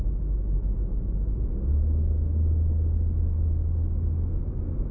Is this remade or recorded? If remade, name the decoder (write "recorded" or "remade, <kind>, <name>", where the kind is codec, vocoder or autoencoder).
recorded